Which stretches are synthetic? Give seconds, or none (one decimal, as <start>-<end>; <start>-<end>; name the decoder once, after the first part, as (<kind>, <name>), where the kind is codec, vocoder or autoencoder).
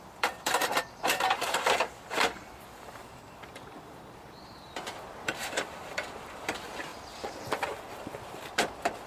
0.0-6.9 (vocoder, BigVGAN v2); 8.0-9.1